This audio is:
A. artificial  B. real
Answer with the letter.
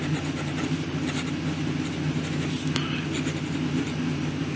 B